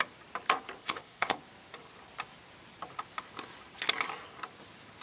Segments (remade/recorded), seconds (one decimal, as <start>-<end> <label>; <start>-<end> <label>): 0.0-0.8 recorded; 0.8-1.4 remade; 1.4-5.0 recorded